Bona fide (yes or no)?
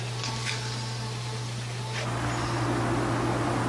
yes